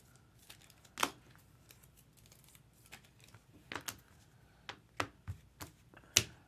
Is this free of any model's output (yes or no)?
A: yes